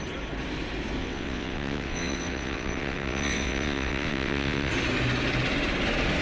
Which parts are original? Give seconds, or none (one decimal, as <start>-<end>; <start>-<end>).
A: 0.0-1.0; 4.7-6.2